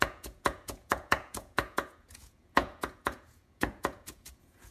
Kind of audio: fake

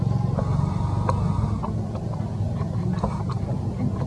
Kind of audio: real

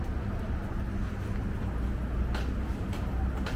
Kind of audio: real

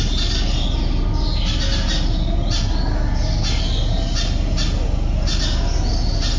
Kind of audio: real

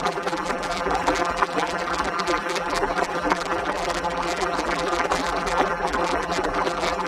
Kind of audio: fake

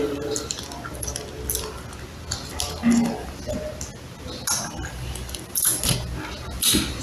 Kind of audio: real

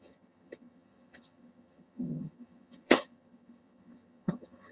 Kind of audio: fake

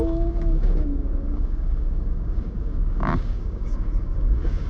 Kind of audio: fake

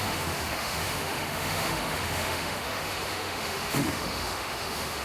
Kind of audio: fake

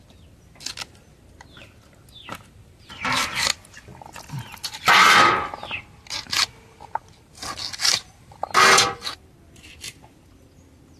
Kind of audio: real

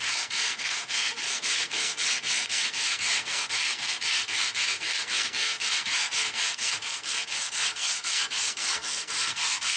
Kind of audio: fake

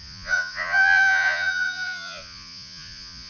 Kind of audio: fake